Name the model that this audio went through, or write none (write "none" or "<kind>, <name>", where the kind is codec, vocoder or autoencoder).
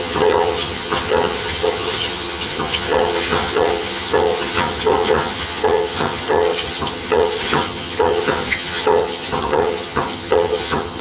vocoder, HiFi-GAN